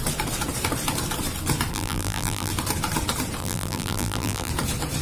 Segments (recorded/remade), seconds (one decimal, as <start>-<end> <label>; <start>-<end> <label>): 0.0-1.7 recorded; 1.7-2.5 remade; 2.5-3.4 recorded; 3.4-4.5 remade; 4.5-5.0 recorded